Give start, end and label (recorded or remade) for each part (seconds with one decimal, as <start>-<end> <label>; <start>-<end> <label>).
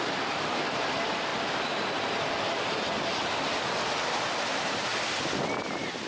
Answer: 0.0-1.3 remade; 1.3-4.3 recorded; 4.3-4.9 remade; 4.9-5.4 recorded; 5.4-6.1 remade